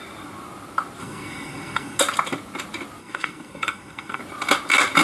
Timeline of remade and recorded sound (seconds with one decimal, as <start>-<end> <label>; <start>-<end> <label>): 0.0-1.0 recorded; 1.0-2.0 remade; 2.0-3.0 recorded; 3.0-4.2 remade; 4.2-5.0 recorded